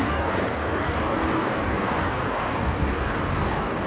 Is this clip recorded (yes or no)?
no